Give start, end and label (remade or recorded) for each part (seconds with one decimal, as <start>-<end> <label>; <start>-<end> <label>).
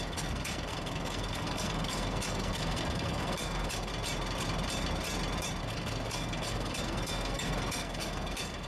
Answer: 0.0-3.9 remade; 3.9-5.6 recorded; 5.6-8.7 remade